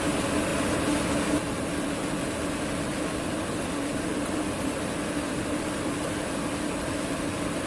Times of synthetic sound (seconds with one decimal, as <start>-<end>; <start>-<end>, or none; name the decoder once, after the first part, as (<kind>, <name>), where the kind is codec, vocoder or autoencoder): none

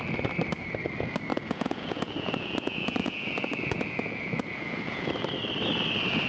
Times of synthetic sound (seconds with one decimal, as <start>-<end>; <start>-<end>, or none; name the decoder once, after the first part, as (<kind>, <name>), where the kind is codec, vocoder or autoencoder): 1.3-5.1 (vocoder, Vocos)

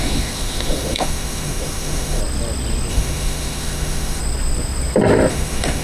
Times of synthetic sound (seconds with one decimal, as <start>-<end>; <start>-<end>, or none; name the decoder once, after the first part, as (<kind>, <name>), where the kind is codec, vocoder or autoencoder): 0.0-2.2 (autoencoder, DAC-VAE); 2.9-4.2; 5.3-5.8